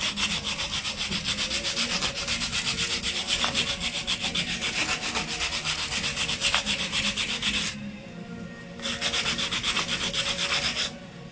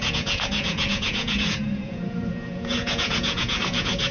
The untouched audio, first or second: first